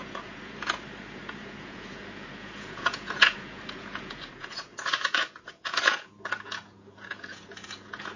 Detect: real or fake fake